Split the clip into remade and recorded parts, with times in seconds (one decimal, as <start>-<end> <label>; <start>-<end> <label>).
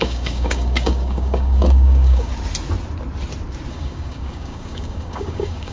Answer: 0.0-2.3 remade; 2.3-3.7 recorded; 3.7-5.7 remade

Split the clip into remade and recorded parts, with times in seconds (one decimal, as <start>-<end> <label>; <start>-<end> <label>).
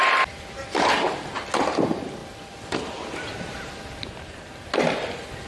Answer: 0.0-5.5 recorded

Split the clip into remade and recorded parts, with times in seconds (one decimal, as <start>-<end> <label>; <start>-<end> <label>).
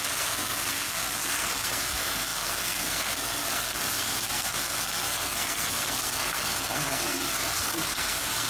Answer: 0.0-8.5 remade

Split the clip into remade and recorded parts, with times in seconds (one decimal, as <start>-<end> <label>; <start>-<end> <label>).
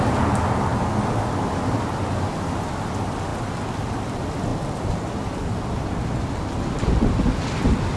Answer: 0.0-8.0 recorded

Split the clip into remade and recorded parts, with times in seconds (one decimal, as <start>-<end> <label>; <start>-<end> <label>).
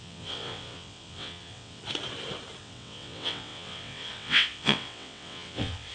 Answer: 0.0-1.8 remade; 1.8-2.6 recorded; 2.6-5.9 remade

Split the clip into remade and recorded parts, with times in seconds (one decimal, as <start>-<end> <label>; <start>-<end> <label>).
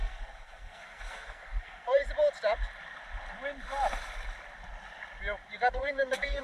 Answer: 0.0-2.0 remade; 2.0-5.7 recorded; 5.7-6.4 remade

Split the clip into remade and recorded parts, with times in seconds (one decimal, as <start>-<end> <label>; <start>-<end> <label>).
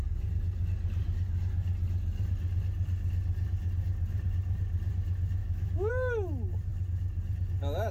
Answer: 0.0-5.4 recorded; 5.4-5.9 remade; 5.9-7.9 recorded